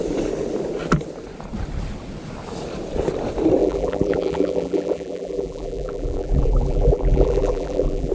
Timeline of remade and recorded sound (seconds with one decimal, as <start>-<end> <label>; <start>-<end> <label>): 0.0-3.6 recorded; 3.6-8.1 remade